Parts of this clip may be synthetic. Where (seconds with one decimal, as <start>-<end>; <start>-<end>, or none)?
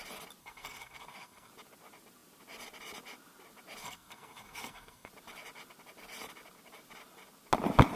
0.4-1.5; 3.8-5.1